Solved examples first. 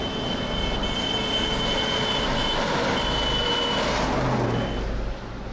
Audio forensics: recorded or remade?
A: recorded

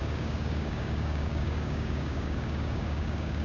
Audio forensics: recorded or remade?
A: remade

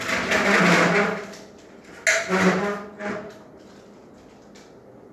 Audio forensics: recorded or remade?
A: recorded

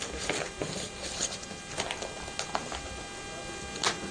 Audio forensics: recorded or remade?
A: recorded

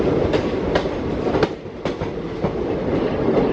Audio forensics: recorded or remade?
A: recorded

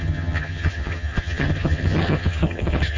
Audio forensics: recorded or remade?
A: remade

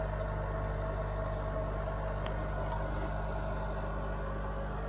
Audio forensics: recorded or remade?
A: recorded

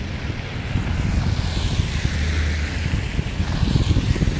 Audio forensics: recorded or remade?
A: recorded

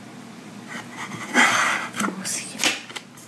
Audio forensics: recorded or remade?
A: recorded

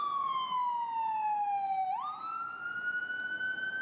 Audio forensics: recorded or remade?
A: recorded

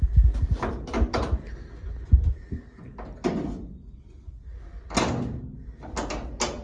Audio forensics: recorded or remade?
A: recorded